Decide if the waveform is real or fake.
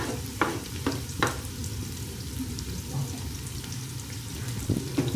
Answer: fake